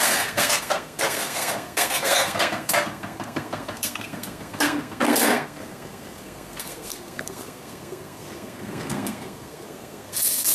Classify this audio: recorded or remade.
remade